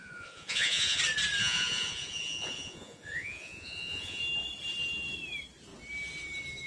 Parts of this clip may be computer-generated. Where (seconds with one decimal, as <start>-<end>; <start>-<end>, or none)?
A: 0.0-1.0; 1.4-4.2